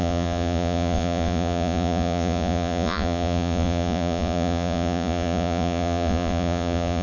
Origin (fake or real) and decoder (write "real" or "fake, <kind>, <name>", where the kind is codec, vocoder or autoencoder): fake, vocoder, Vocos